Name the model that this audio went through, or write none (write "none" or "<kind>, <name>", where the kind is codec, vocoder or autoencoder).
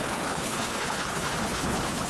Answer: codec, HILCodec